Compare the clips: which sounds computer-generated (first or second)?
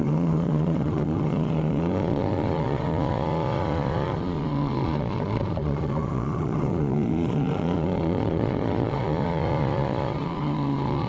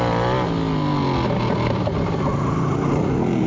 first